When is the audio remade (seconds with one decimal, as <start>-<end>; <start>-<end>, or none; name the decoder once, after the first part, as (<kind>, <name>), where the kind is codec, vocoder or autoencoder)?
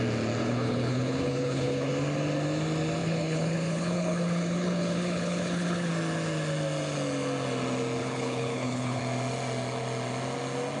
0.4-1.9 (codec, HILCodec); 3.0-5.9; 8.0-9.0